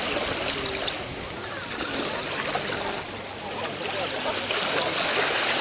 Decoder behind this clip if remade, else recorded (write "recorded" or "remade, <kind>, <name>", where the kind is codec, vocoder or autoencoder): recorded